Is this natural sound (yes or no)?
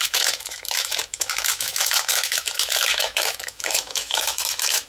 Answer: no